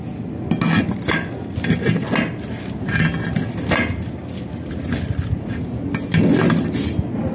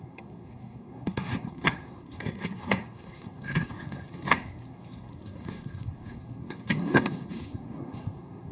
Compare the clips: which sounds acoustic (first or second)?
first